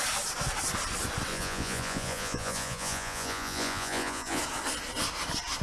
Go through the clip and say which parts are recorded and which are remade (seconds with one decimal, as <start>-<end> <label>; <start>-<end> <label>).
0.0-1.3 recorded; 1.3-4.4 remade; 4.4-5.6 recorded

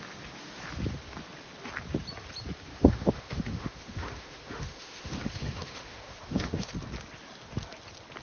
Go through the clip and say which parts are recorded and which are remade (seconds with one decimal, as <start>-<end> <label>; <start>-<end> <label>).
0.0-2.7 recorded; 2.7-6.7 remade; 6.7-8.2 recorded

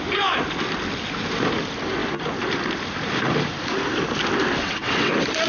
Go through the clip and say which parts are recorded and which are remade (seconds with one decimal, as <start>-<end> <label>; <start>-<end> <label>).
0.0-4.6 recorded; 4.6-5.1 remade; 5.1-5.5 recorded

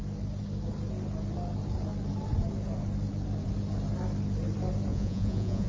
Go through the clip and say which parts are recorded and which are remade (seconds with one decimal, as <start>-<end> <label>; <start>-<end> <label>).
0.0-4.9 recorded; 4.9-5.7 remade